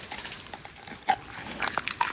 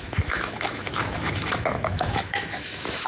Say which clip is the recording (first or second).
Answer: first